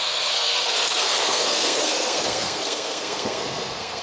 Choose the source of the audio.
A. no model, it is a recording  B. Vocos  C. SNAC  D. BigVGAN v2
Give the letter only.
C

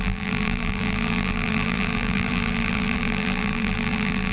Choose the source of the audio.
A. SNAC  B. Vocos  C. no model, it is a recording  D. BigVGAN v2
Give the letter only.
D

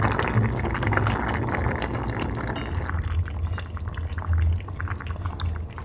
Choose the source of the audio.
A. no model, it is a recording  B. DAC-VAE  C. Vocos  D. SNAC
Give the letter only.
A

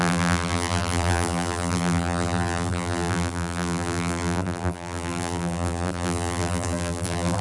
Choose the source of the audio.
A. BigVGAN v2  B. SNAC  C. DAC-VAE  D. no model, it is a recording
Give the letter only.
A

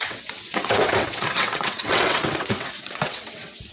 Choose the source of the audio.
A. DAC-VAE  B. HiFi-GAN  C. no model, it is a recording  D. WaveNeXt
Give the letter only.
D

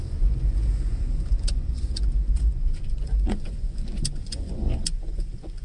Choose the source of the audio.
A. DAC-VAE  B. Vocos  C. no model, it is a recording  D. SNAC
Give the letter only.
B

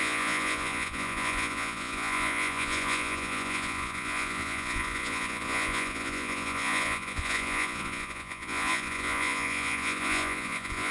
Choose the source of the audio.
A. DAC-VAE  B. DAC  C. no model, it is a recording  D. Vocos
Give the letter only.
D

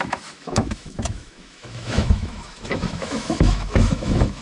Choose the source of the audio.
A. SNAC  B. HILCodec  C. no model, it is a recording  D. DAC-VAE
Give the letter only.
D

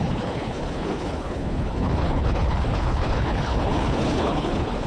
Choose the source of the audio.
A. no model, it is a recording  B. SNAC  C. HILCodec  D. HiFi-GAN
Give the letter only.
C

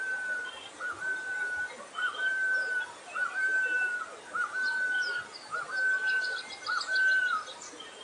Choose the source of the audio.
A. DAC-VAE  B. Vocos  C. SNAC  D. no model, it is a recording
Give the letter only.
D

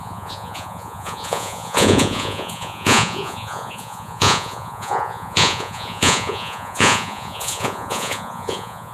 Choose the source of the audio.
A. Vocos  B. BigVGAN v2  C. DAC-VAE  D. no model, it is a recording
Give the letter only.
A